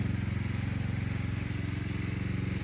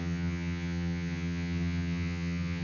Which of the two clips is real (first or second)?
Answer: first